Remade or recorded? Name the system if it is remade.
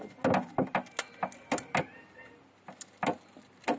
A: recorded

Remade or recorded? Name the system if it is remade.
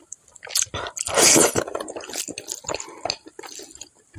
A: recorded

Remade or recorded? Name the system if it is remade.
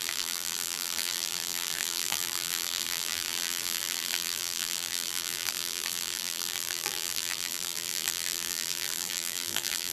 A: remade, vocoder, BigVGAN v2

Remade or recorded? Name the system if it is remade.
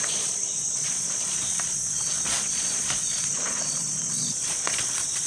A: remade, vocoder, Vocos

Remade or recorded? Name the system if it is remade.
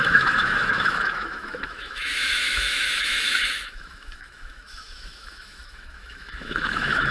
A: remade, autoencoder, DAC-VAE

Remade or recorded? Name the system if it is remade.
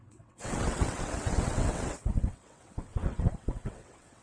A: remade, vocoder, WaveNeXt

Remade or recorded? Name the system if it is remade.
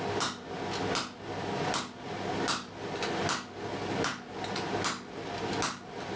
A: recorded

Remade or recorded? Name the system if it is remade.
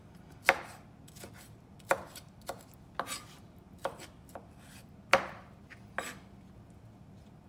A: recorded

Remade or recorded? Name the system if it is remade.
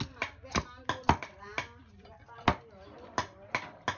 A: recorded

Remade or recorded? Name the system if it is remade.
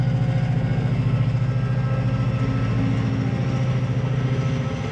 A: recorded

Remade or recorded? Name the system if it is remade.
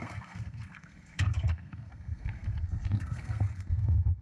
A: remade, codec, SNAC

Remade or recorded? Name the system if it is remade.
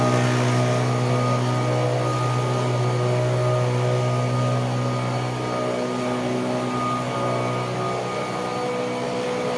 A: recorded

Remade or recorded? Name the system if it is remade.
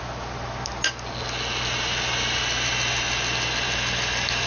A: recorded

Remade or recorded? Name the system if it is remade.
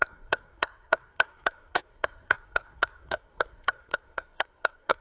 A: remade, codec, SNAC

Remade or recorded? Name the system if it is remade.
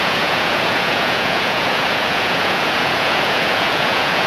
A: remade, vocoder, Vocos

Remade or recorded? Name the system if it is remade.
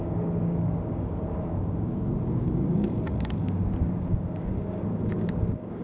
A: remade, codec, DAC